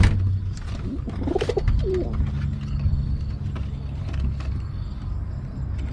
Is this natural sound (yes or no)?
yes